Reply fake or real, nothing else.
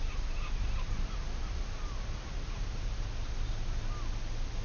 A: real